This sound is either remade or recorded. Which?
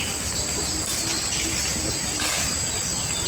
recorded